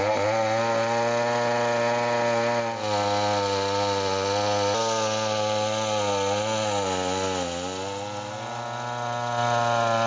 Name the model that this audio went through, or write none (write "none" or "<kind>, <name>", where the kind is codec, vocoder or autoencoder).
none